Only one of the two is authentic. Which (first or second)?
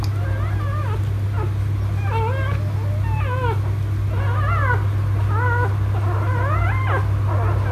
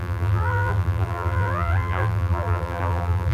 first